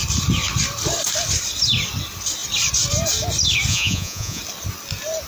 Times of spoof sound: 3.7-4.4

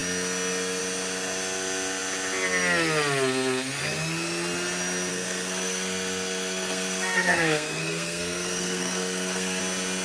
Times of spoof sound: 5.1-9.6

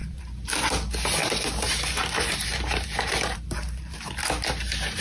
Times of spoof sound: 0.0-0.5; 1.2-4.2

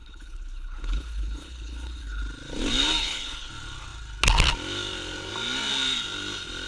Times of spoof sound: 0.0-2.2; 3.0-3.5

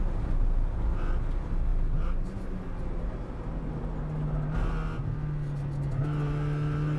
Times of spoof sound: none

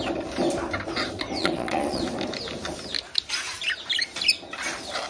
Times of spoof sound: 1.4-2.0

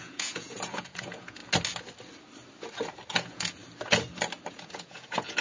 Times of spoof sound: 0.0-1.4; 3.1-3.6; 4.5-5.4

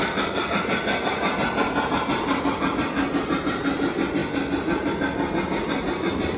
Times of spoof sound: none